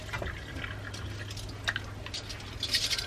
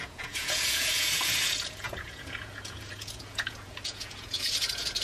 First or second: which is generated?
second